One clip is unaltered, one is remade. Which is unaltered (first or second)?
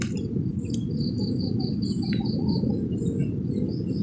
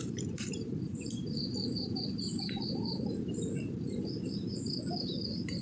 first